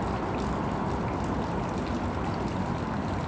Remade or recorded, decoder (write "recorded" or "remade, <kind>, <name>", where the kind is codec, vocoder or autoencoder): recorded